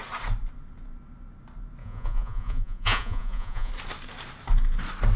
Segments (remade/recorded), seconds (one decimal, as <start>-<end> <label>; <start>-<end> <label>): 0.0-1.8 recorded; 1.8-3.7 remade; 3.7-5.2 recorded